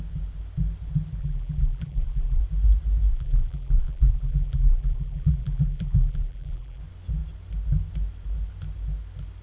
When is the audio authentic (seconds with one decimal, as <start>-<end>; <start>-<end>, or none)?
0.0-1.2; 2.4-3.1; 6.8-9.4